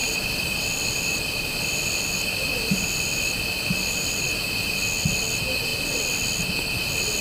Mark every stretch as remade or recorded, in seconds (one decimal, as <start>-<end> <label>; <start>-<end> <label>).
0.0-4.3 remade; 4.3-7.2 recorded